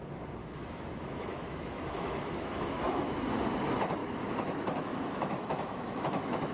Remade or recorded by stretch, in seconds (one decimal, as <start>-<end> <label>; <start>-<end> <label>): 0.0-0.4 recorded; 0.4-3.3 remade; 3.3-4.0 recorded; 4.0-6.5 remade